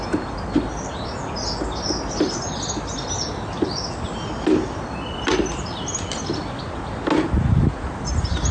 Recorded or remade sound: recorded